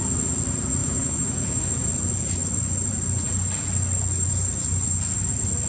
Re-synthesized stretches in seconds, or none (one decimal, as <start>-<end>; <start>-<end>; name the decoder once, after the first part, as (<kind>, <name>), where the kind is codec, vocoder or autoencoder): 0.8-1.7 (autoencoder, DAC-VAE)